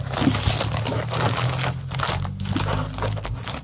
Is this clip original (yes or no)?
yes